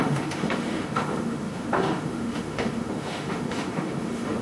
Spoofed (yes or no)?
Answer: yes